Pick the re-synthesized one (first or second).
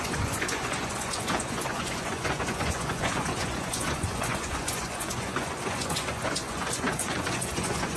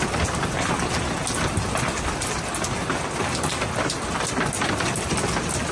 first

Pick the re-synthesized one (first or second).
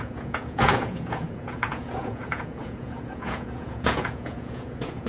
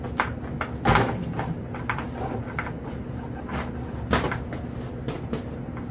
first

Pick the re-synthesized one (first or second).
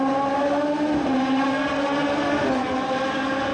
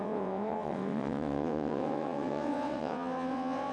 second